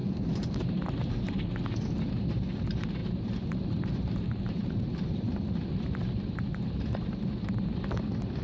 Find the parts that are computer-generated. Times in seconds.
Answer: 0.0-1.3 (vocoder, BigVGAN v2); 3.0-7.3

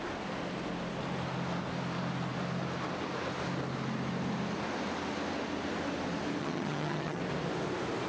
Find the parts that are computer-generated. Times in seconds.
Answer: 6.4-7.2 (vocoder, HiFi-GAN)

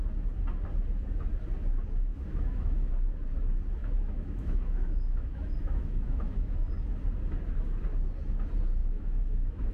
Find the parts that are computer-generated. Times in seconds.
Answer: 2.1-2.9 (autoencoder, DAC-VAE); 3.8-6.7; 8.8-9.7

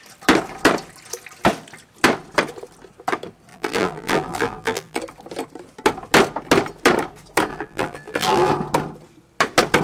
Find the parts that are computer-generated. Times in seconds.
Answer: 3.5-5.0 (vocoder, BigVGAN v2); 7.5-8.5